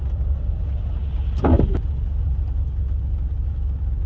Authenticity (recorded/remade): recorded